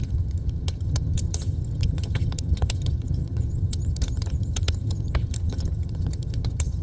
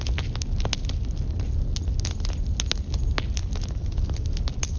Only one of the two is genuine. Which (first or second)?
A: second